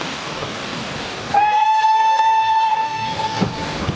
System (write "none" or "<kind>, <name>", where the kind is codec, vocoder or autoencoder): codec, DAC